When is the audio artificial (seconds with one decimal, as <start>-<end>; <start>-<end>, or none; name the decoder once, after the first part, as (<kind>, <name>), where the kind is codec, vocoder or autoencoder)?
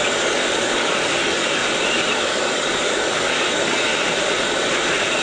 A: 0.0-1.6 (codec, DAC); 2.1-3.9